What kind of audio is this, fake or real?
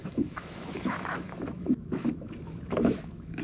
fake